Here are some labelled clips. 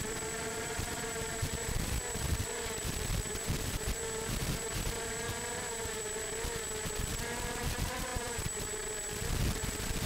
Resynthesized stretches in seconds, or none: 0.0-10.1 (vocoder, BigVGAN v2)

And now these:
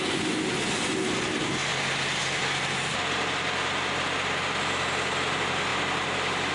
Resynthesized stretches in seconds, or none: none

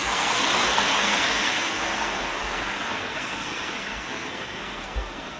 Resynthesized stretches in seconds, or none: 0.0-5.4 (codec, SNAC)

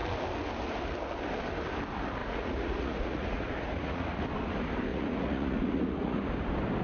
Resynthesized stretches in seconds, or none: 2.2-4.2 (vocoder, Vocos); 4.9-6.2

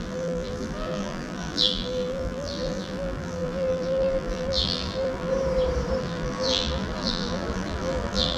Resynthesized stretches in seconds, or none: 0.0-5.3 (vocoder, BigVGAN v2); 6.0-8.4